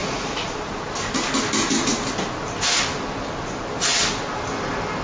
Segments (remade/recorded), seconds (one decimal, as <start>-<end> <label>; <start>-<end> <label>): 0.0-0.5 remade; 0.5-5.0 recorded